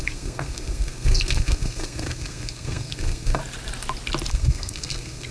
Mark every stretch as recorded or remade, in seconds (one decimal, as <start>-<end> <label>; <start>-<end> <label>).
0.0-3.4 remade; 3.4-4.3 recorded; 4.3-5.3 remade